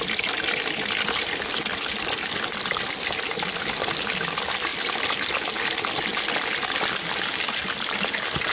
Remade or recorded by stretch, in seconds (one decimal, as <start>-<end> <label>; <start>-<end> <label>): 0.0-1.2 recorded; 1.2-3.3 remade; 3.3-4.7 recorded; 4.7-5.6 remade; 5.6-8.5 recorded